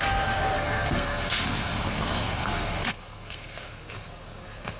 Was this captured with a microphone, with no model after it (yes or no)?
no